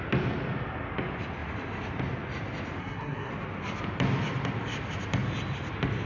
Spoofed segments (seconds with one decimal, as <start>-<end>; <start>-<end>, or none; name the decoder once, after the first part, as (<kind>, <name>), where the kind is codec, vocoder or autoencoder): 2.8-3.3 (codec, SNAC)